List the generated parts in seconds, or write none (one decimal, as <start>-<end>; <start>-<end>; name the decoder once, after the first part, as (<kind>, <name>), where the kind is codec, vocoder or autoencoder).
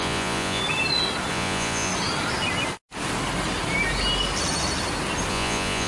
0.0-0.6 (vocoder, Vocos); 1.3-1.9; 5.3-5.9